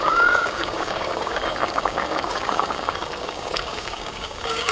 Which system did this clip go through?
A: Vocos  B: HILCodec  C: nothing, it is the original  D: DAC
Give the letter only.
D